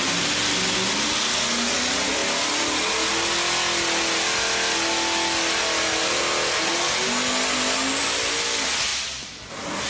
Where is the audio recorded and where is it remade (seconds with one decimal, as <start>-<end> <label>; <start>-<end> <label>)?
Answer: 0.0-9.9 recorded